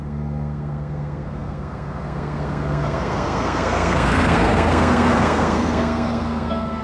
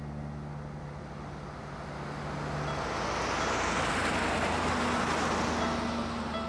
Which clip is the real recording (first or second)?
second